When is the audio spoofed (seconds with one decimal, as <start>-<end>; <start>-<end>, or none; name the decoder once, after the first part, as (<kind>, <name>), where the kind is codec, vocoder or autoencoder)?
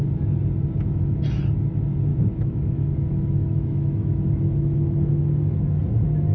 2.1-5.1 (autoencoder, DAC-VAE)